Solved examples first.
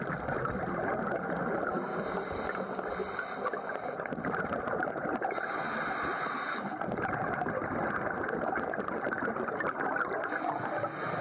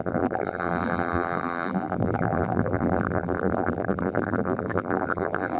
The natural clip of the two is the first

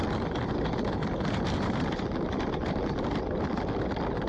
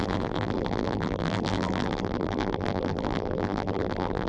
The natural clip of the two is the first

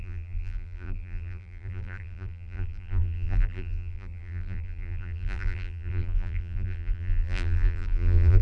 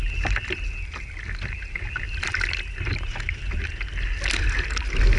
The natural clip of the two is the second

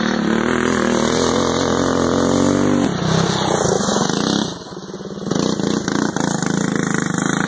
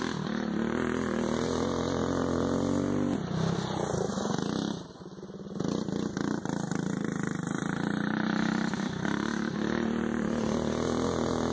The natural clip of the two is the first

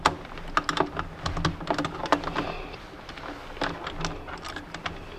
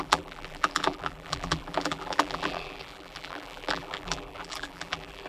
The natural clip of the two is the first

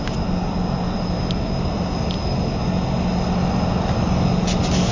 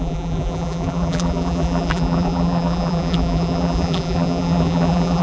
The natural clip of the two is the first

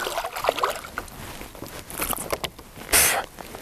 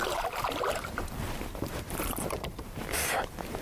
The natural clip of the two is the first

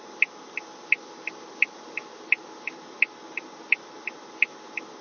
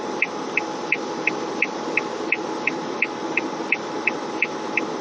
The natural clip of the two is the first